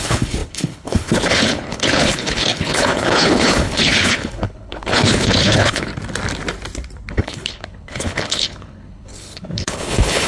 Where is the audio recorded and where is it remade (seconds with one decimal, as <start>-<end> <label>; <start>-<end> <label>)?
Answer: 0.0-5.9 remade; 5.9-7.1 recorded; 7.1-10.3 remade